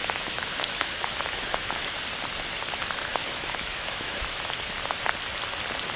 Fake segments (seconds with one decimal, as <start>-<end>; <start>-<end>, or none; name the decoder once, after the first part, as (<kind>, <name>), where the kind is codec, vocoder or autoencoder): 0.0-2.0 (autoencoder, DAC-VAE); 3.2-4.6